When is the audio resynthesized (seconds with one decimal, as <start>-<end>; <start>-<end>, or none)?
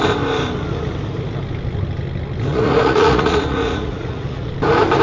2.5-4.5